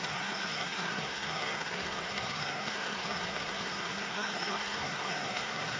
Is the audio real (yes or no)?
no